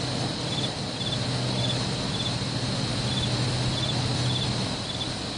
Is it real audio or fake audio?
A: real